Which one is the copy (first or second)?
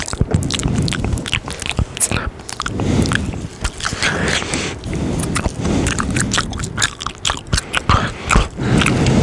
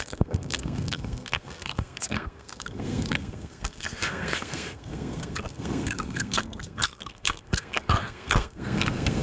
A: second